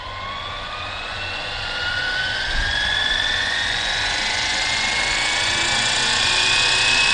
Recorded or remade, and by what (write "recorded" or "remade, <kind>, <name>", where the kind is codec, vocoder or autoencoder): remade, vocoder, Vocos